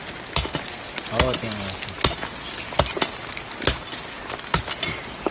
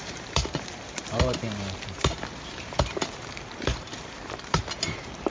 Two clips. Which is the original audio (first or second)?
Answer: first